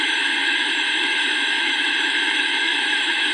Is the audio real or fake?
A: fake